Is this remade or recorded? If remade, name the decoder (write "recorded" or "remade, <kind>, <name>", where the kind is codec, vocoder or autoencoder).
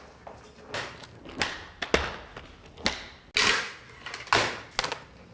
recorded